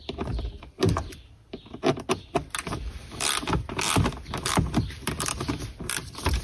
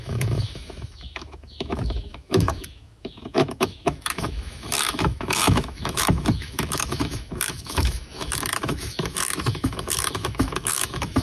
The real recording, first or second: first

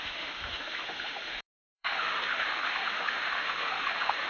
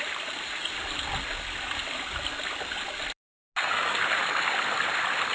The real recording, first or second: second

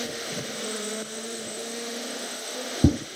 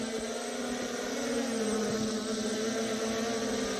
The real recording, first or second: second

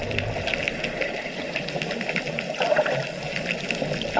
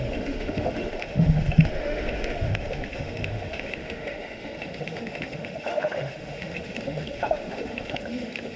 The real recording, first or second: first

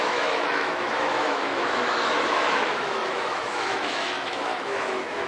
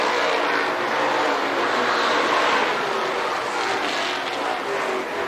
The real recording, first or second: second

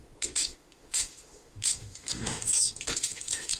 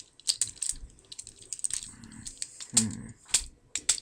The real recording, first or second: second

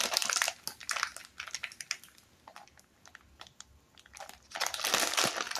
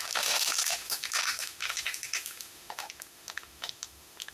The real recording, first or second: first